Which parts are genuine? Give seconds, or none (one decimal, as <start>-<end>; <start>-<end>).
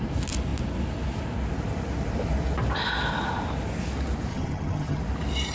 0.0-4.3; 5.0-5.5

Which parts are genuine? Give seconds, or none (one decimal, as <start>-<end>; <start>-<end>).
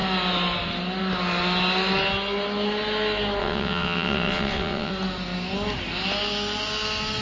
0.0-3.4; 4.9-7.2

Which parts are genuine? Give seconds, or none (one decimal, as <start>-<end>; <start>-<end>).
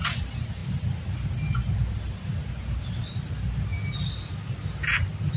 0.0-5.4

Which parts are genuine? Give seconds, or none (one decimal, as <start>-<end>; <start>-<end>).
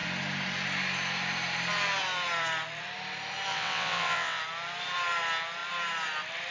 0.0-3.5; 4.4-6.5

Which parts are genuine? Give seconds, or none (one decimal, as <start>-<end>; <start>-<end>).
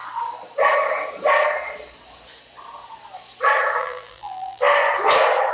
0.0-3.8; 4.6-5.5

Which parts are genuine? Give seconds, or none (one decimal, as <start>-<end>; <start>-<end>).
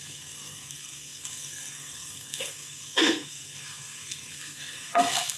none